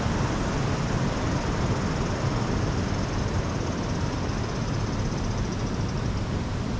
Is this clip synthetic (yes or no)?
no